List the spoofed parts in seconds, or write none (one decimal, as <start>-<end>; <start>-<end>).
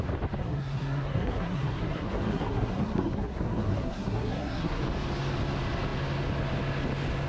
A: 0.4-4.8